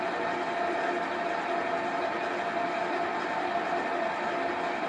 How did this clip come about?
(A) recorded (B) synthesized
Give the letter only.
A